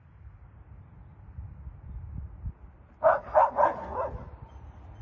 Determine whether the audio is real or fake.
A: real